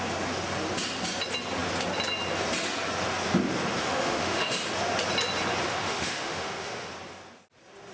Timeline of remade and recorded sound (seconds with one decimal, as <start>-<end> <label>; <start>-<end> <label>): 0.0-3.8 recorded; 3.8-4.6 remade; 4.6-5.7 recorded; 5.7-6.9 remade; 6.9-7.9 recorded